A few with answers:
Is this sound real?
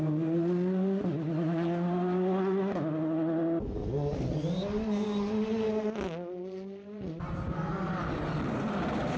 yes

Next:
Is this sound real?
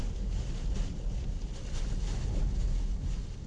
yes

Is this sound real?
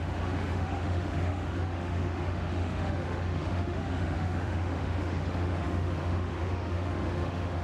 no